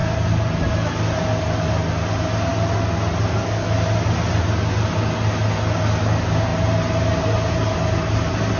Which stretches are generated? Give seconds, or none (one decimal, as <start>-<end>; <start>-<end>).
none